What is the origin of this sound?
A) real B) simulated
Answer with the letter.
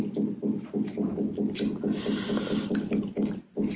A